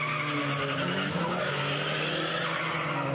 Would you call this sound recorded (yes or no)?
yes